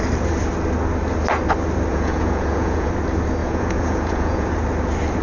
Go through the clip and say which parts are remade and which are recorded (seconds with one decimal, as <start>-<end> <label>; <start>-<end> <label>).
0.0-1.9 recorded; 1.9-2.9 remade; 2.9-3.4 recorded; 3.4-4.5 remade; 4.5-5.2 recorded